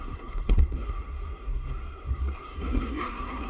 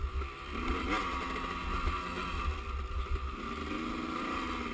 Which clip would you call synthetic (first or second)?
first